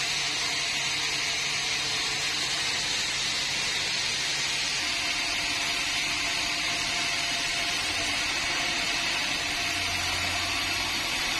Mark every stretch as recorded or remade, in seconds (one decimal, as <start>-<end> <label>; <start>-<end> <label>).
0.0-7.5 recorded; 7.5-8.3 remade; 8.3-11.4 recorded